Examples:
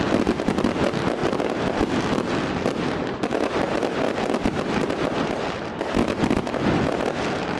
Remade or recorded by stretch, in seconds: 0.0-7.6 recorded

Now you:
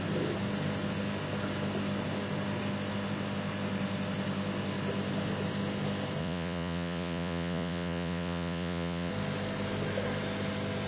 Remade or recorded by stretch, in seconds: 0.0-6.2 recorded; 6.2-9.1 remade; 9.1-10.9 recorded